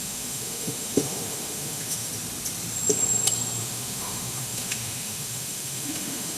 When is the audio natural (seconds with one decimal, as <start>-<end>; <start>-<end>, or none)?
2.1-3.6